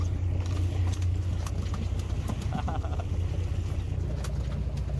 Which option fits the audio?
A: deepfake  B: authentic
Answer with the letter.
B